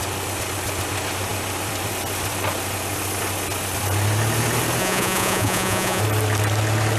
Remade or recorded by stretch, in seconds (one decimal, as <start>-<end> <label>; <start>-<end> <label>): 0.0-4.8 recorded; 4.8-6.0 remade; 6.0-7.0 recorded